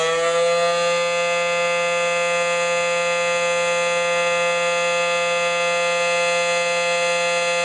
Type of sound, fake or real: real